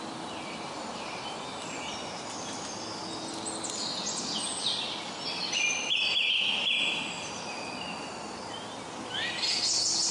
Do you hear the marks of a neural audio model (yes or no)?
no